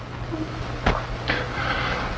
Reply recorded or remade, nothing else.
recorded